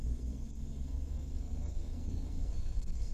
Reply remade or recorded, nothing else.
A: remade